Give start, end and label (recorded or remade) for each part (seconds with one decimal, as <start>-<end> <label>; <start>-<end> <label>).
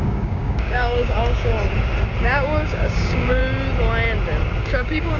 0.0-1.5 remade; 1.5-2.2 recorded; 2.2-3.4 remade; 3.4-4.6 recorded; 4.6-5.2 remade